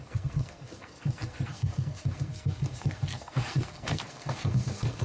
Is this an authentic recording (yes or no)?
no